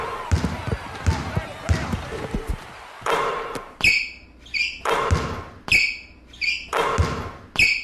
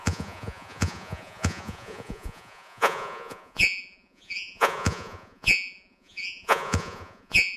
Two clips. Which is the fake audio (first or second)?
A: second